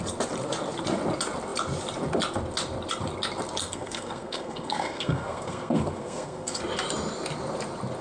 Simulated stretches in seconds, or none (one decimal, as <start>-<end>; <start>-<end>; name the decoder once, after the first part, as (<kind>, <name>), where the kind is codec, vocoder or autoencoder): 3.6-6.6 (codec, SNAC)